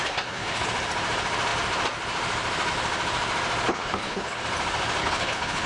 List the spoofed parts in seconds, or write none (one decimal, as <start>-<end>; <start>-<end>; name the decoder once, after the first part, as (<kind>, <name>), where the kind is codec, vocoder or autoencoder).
0.0-0.7 (codec, HILCodec); 3.7-4.4; 5.0-5.7